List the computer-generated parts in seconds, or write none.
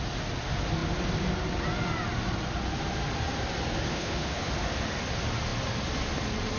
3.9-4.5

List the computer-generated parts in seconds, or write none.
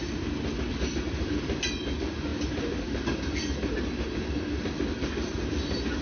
none